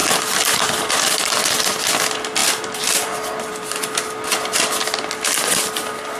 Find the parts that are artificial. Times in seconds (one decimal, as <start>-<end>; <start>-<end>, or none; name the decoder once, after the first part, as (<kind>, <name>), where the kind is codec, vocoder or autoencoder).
0.0-2.0 (vocoder, BigVGAN v2); 2.4-3.8